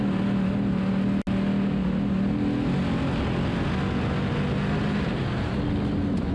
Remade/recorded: recorded